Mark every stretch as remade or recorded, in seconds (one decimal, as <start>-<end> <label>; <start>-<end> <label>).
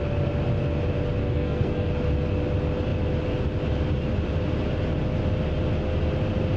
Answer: 0.0-1.2 recorded; 1.2-1.9 remade; 1.9-6.6 recorded